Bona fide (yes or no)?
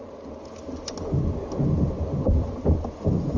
yes